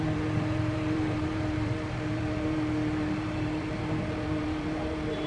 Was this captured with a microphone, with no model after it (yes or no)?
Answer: no